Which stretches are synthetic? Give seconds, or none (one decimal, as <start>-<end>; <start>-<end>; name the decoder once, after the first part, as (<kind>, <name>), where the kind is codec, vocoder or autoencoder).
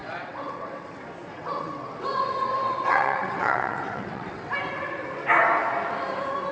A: 0.0-0.9 (vocoder, WaveNeXt); 1.3-4.5